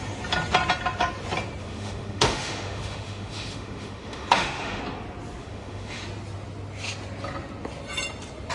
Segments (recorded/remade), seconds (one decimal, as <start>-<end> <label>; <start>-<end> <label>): 0.0-1.6 recorded; 1.6-4.8 remade; 4.8-5.4 recorded; 5.4-6.0 remade; 6.0-8.5 recorded